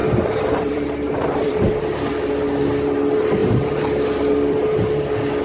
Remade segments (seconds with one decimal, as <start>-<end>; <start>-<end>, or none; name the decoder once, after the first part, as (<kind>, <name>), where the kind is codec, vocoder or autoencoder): 0.0-2.3 (vocoder, BigVGAN v2); 3.4-4.8